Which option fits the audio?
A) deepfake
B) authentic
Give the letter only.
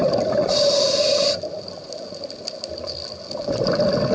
B